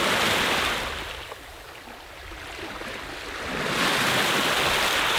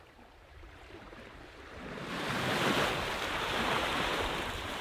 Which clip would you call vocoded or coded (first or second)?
second